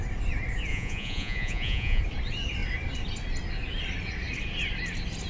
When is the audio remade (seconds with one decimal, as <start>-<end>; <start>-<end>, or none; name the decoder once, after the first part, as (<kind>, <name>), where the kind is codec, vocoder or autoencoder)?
0.7-2.0 (vocoder, Vocos)